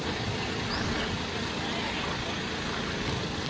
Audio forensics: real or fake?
real